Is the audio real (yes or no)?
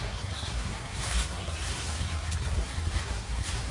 no